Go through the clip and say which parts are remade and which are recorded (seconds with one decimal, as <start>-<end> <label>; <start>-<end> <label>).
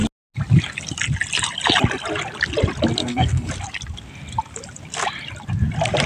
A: 0.0-3.0 recorded; 3.0-3.5 remade; 3.5-6.1 recorded